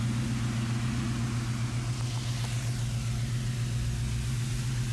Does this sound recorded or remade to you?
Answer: recorded